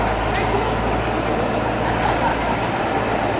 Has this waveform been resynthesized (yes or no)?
no